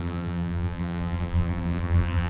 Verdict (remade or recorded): remade